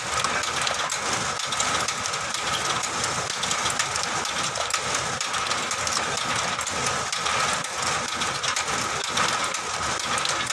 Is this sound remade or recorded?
recorded